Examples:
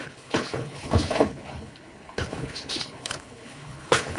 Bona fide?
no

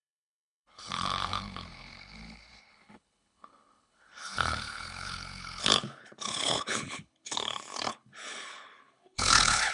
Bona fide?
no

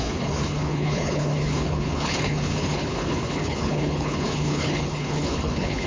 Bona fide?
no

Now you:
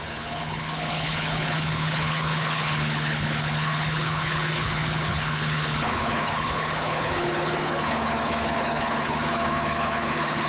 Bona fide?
no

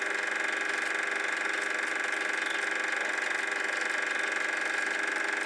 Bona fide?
yes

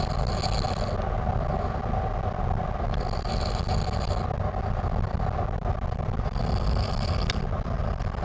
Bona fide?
yes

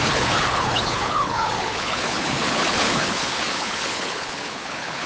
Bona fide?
no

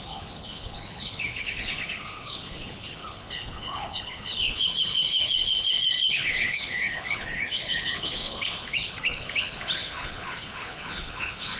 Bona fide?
no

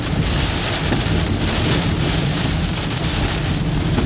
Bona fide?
yes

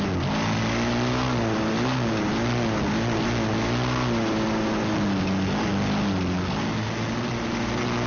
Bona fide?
yes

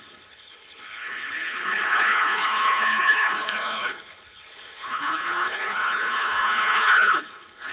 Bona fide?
no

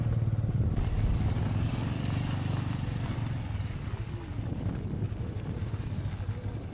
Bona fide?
yes